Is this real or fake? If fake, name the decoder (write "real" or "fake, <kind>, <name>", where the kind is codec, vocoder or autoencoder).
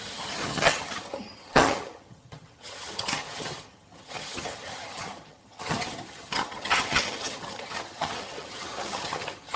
fake, vocoder, HiFi-GAN